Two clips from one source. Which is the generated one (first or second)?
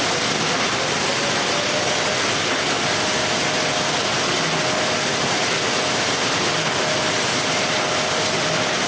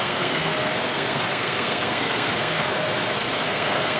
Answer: second